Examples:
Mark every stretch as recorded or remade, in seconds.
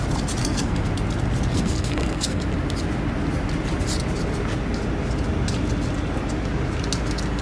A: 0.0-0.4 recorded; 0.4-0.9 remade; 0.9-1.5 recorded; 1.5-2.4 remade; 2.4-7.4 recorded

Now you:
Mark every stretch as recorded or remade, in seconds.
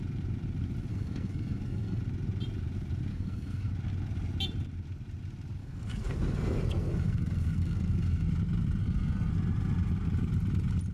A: 0.0-0.9 recorded; 0.9-2.0 remade; 2.0-3.1 recorded; 3.1-3.7 remade; 3.7-5.6 recorded; 5.6-8.3 remade; 8.3-8.8 recorded; 8.8-9.3 remade; 9.3-10.9 recorded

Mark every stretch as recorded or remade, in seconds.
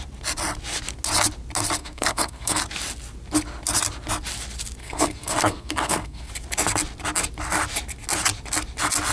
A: 0.0-1.8 recorded; 1.8-2.6 remade; 2.6-4.8 recorded; 4.8-6.3 remade; 6.3-9.1 recorded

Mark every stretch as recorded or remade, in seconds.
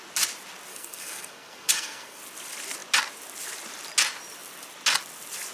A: 0.0-0.7 recorded; 0.7-2.2 remade; 2.2-5.5 recorded